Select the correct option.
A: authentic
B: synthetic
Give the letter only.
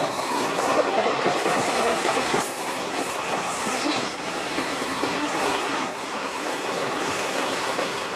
B